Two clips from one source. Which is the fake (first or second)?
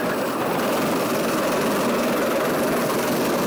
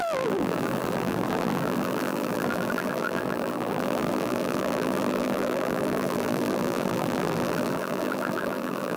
second